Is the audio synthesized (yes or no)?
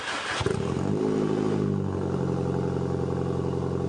no